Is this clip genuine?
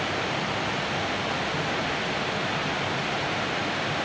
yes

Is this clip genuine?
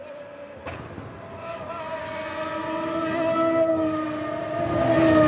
yes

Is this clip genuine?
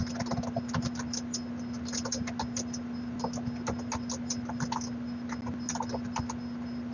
yes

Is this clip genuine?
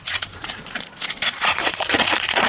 no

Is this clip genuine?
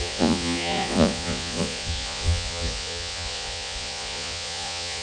no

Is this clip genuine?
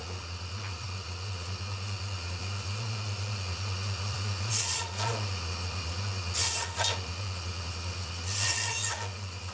no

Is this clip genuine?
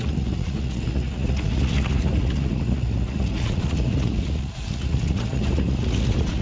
no